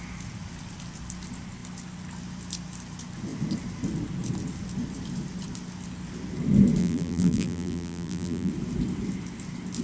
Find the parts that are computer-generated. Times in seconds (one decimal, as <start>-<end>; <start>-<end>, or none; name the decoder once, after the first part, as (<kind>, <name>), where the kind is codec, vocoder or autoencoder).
6.8-8.5 (vocoder, BigVGAN v2)